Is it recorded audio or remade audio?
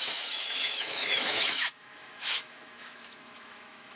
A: remade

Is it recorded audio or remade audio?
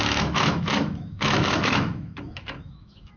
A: remade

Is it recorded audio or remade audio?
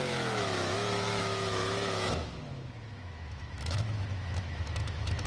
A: remade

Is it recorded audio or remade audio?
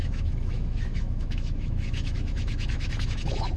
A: remade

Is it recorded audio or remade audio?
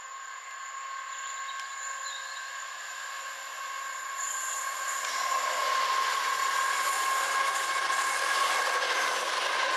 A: recorded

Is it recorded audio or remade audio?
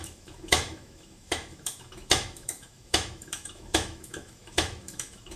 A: remade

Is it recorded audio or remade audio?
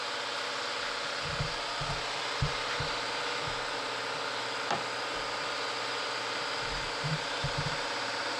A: recorded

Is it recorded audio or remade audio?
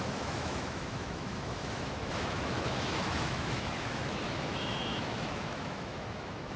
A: remade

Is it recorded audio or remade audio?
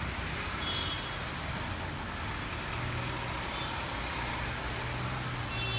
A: recorded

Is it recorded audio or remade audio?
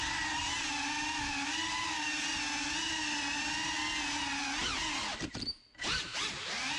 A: recorded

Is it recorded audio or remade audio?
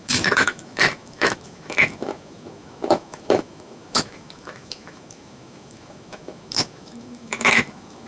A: remade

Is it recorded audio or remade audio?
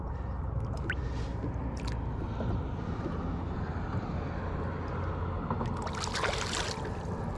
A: recorded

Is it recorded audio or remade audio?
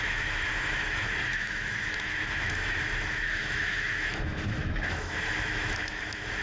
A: remade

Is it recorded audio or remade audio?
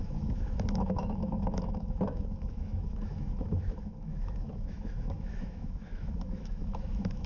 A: remade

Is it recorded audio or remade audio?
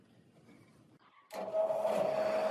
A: recorded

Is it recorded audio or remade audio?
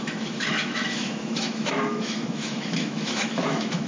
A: remade